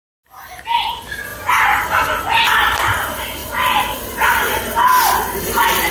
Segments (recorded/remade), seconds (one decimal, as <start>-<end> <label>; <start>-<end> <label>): 0.0-5.9 recorded